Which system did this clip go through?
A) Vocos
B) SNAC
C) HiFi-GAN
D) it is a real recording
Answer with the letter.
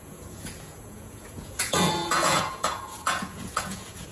A